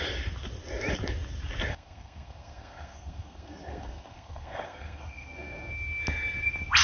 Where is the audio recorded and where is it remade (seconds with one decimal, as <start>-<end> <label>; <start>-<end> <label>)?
0.0-1.7 recorded; 1.7-5.7 remade; 5.7-6.8 recorded